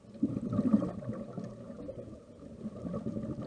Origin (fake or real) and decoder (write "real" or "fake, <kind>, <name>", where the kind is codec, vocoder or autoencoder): real